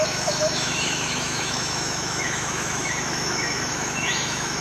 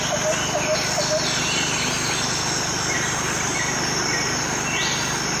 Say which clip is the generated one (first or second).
first